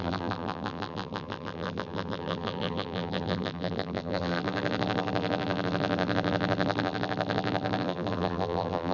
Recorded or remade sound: remade